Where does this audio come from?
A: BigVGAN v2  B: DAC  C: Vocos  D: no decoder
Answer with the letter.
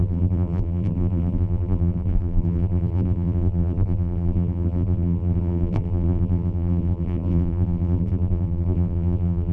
A